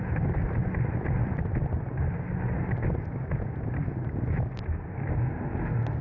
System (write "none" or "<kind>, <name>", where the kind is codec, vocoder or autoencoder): none